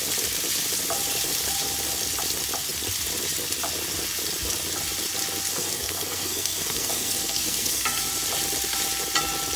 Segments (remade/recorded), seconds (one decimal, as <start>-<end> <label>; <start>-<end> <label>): 0.0-5.5 recorded; 5.5-8.1 remade; 8.1-9.6 recorded